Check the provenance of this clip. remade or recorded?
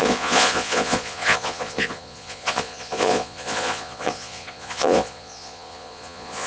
remade